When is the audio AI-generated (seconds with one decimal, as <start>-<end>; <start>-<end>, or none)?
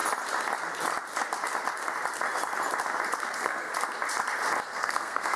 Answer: 3.2-3.7; 4.6-5.4